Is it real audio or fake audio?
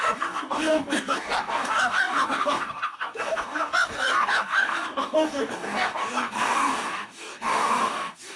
fake